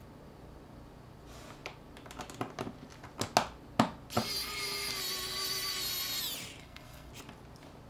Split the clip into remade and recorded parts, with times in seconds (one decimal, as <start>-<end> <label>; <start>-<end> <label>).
0.0-6.6 recorded; 6.6-7.1 remade; 7.1-7.9 recorded